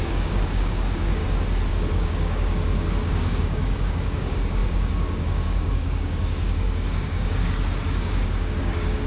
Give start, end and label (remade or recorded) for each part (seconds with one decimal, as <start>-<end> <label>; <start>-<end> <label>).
0.0-1.2 remade; 1.2-1.7 recorded; 1.7-9.1 remade